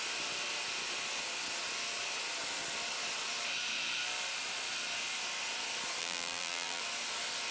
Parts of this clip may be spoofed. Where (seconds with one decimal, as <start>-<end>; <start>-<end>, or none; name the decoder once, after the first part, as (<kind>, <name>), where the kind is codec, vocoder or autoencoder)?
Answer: 6.0-6.8 (vocoder, BigVGAN v2)